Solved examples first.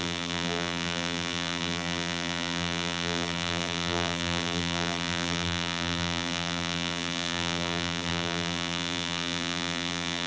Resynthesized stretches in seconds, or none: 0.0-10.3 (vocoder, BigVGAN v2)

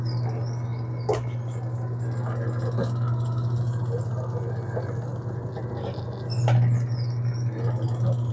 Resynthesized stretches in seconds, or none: none